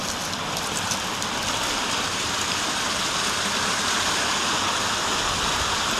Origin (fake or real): real